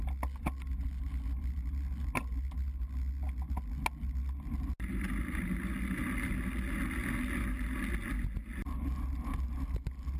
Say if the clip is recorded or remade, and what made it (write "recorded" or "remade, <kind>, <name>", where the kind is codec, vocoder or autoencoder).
recorded